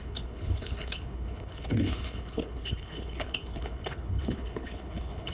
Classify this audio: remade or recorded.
remade